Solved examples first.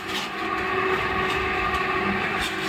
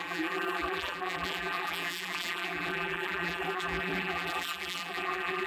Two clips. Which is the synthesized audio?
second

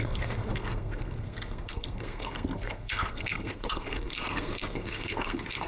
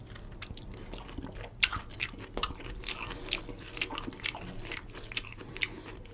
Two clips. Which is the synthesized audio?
first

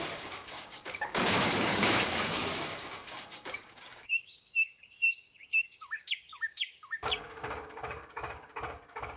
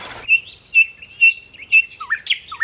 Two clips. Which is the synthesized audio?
first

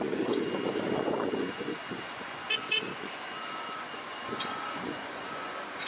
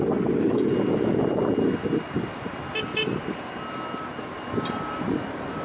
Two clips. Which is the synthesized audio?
first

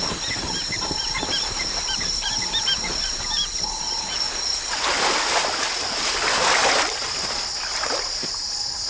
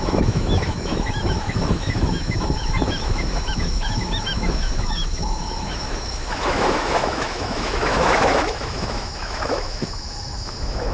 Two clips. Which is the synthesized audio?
second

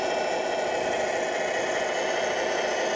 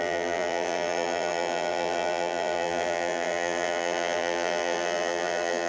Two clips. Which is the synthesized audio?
second